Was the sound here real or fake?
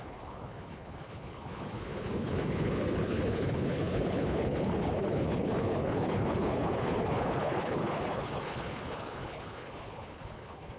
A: fake